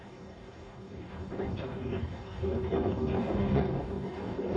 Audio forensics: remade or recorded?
remade